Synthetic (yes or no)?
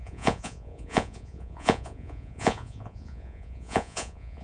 yes